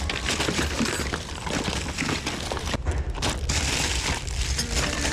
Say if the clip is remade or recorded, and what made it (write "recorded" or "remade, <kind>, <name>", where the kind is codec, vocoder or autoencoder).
remade, vocoder, BigVGAN v2